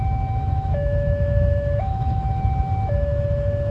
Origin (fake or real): fake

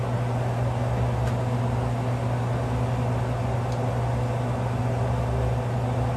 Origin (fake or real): real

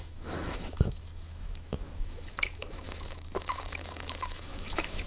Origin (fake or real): fake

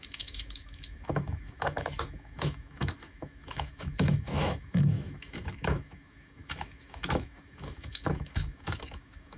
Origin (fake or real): fake